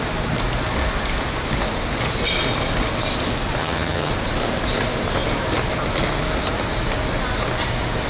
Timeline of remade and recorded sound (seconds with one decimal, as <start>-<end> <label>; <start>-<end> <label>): 0.0-3.6 recorded; 3.6-4.1 remade; 4.1-8.1 recorded